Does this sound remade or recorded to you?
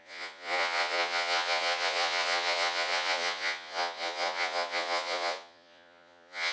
remade